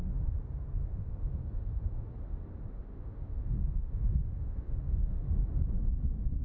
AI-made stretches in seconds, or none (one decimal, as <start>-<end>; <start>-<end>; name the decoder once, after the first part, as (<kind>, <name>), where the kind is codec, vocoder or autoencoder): 0.9-2.1 (autoencoder, DAC-VAE); 2.8-5.4